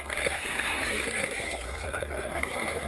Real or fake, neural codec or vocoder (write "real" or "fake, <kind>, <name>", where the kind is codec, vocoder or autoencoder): fake, codec, SNAC